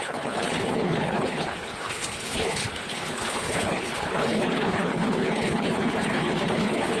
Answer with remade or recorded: remade